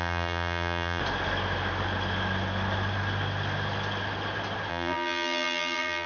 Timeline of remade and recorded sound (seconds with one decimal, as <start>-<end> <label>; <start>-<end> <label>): 0.0-1.0 remade; 1.0-4.7 recorded; 4.7-6.1 remade